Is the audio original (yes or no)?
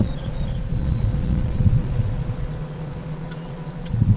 no